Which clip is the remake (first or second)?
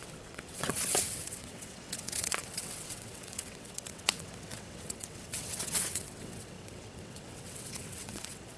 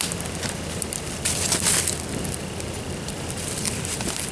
first